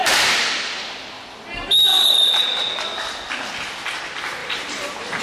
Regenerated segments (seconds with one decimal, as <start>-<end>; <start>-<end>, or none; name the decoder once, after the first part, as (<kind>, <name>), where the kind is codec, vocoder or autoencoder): 1.9-2.7 (vocoder, BigVGAN v2); 4.4-5.2